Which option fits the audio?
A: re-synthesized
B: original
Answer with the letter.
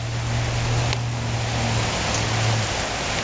B